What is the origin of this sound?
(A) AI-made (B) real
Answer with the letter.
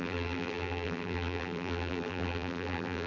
A